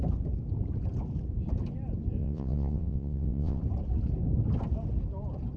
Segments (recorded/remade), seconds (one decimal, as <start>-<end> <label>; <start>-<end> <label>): 0.0-2.2 recorded; 2.2-3.6 remade; 3.6-5.6 recorded